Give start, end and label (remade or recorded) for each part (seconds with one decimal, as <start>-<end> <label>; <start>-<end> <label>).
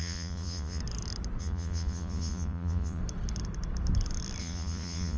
0.0-0.8 remade; 0.8-1.4 recorded; 1.4-3.0 remade; 3.0-4.4 recorded; 4.4-5.2 remade